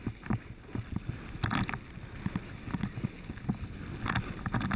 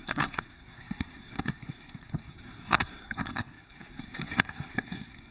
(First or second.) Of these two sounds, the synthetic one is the second